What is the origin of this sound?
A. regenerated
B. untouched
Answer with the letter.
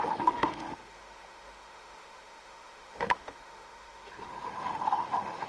A